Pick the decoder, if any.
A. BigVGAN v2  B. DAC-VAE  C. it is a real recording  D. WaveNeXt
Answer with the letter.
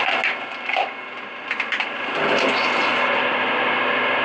C